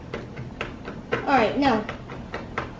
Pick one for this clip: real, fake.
real